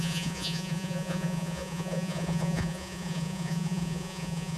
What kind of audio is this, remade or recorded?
remade